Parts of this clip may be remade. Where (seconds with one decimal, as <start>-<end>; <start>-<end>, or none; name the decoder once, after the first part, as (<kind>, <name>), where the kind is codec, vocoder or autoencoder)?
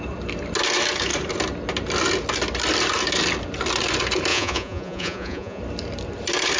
4.3-5.6 (vocoder, Vocos)